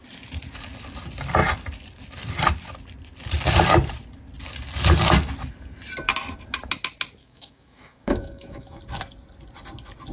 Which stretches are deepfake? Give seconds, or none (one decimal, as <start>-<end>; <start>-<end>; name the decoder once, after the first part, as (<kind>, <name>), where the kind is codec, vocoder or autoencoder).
7.2-8.8 (autoencoder, DAC-VAE)